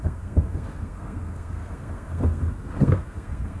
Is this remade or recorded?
remade